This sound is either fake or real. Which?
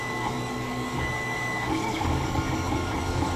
fake